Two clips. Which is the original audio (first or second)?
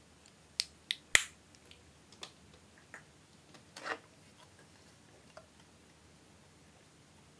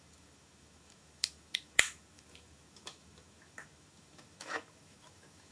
first